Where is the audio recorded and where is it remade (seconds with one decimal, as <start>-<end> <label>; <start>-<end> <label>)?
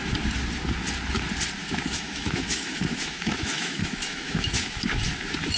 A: 0.0-1.6 recorded; 1.6-5.0 remade; 5.0-5.6 recorded